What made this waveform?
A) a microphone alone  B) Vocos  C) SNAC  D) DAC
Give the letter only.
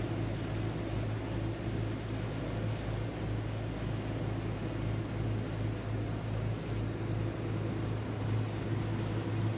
A